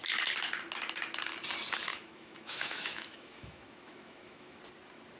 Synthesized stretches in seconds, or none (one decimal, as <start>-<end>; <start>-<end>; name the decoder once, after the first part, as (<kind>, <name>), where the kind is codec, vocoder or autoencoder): 1.9-4.6 (autoencoder, DAC-VAE)